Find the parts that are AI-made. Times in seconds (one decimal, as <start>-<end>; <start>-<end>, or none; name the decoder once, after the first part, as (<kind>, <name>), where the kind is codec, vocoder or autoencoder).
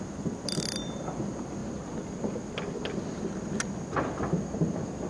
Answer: 0.0-1.6 (vocoder, BigVGAN v2)